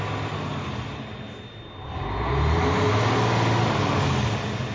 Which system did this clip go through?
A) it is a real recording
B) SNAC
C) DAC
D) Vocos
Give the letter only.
A